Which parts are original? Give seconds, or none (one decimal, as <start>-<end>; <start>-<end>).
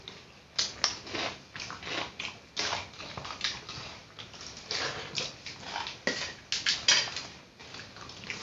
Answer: 0.0-8.4